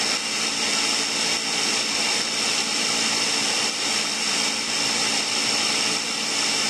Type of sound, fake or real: real